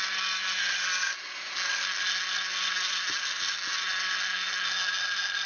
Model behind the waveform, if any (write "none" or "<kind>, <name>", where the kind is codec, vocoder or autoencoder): none